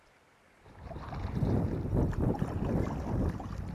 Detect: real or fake real